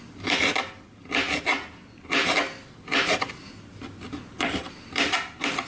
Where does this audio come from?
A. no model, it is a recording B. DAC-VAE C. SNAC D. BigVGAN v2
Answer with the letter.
A